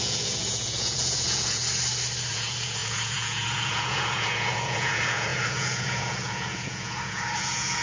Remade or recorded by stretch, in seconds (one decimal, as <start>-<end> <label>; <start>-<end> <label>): 0.0-1.6 remade; 1.6-2.3 recorded; 2.3-7.8 remade